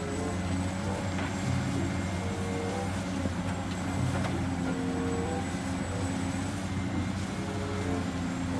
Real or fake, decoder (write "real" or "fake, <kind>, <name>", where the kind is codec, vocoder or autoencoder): real